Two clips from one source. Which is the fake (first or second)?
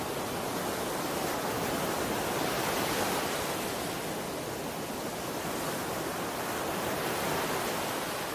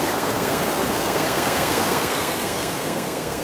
second